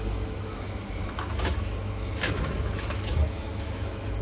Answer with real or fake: fake